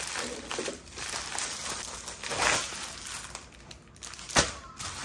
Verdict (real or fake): real